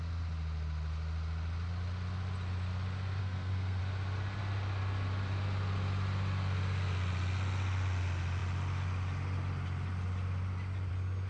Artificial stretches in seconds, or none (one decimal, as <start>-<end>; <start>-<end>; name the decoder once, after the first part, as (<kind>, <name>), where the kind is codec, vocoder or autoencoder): 3.2-3.8 (codec, SNAC)